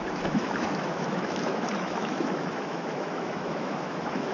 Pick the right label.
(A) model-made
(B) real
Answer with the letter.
A